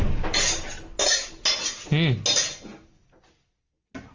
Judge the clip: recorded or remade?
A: recorded